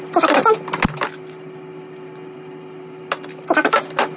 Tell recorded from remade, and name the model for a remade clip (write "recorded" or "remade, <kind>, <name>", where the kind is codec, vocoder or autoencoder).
recorded